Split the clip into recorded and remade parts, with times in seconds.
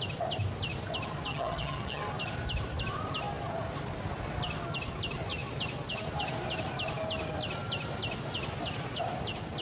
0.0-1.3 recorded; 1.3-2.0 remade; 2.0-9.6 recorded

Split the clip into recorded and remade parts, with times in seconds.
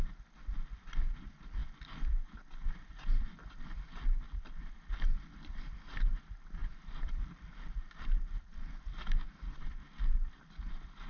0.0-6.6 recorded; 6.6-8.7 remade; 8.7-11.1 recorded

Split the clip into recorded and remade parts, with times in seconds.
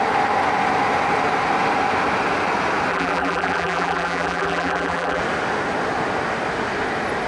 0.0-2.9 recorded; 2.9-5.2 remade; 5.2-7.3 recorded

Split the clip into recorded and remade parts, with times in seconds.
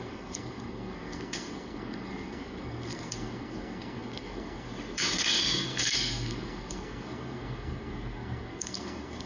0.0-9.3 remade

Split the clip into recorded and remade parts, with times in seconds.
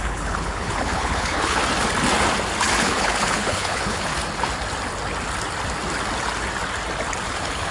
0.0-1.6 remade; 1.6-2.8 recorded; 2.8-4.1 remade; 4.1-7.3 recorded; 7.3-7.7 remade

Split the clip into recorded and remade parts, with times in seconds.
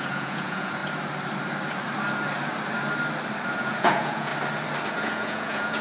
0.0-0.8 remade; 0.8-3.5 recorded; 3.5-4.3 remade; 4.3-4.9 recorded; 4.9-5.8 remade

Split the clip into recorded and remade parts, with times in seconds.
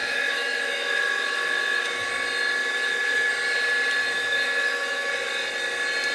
0.0-2.1 remade; 2.1-2.6 recorded; 2.6-3.3 remade; 3.3-4.0 recorded; 4.0-5.1 remade; 5.1-6.1 recorded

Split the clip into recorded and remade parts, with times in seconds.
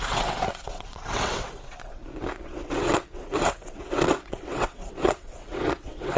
0.0-2.0 remade; 2.0-2.5 recorded; 2.5-6.2 remade